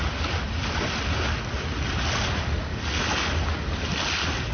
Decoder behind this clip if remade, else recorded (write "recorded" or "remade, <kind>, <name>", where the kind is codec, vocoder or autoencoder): recorded